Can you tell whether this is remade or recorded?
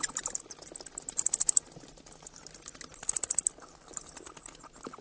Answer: recorded